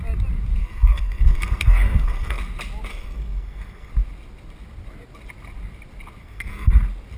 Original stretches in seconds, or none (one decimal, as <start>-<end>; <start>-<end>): 0.0-0.6; 2.4-2.9; 3.9-6.2; 6.7-7.2